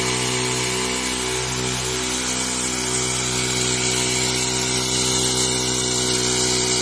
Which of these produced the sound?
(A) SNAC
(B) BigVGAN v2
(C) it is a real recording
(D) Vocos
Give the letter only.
C